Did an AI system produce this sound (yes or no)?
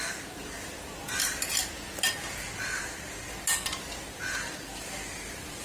no